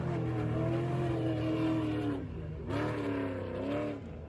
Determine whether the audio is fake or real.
real